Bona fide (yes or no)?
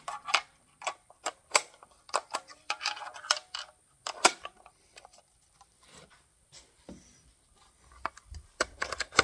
no